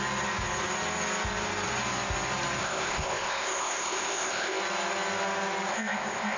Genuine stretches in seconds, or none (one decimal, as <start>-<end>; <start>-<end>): 0.0-2.6; 4.6-5.7